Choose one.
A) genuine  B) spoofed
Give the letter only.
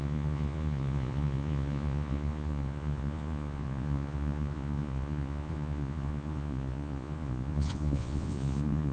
B